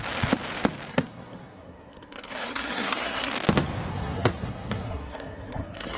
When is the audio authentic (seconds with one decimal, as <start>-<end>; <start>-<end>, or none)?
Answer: 0.0-0.9; 3.3-3.9